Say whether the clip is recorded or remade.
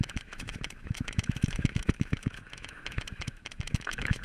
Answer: remade